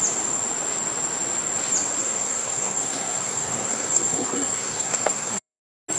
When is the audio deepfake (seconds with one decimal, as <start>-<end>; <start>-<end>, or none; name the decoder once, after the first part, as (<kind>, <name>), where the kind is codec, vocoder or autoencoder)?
2.0-5.6 (codec, SNAC)